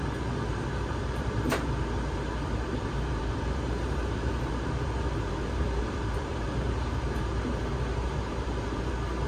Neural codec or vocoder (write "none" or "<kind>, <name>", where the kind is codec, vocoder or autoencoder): vocoder, BigVGAN v2